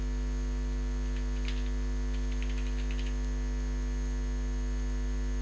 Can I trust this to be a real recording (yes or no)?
yes